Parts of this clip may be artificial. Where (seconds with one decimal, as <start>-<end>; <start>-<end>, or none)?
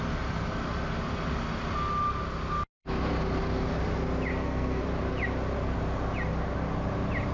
4.3-4.8